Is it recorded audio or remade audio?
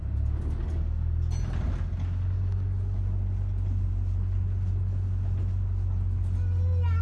recorded